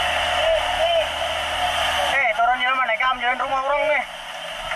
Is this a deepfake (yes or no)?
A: no